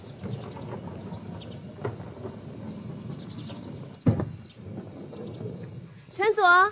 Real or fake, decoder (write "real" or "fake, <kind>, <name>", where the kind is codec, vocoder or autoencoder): real